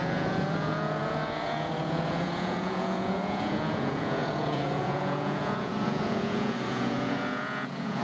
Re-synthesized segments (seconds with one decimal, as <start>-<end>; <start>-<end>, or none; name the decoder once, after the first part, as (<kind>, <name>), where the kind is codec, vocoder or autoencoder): 0.0-8.0 (vocoder, Vocos)